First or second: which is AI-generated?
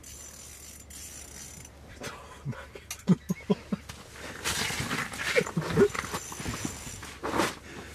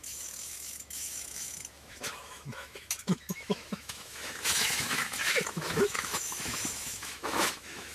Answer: second